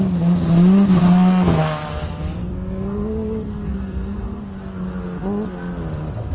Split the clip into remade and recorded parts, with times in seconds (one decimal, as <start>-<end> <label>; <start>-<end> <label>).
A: 0.0-1.0 recorded; 1.0-1.6 remade; 1.6-2.4 recorded; 2.4-4.4 remade; 4.4-6.3 recorded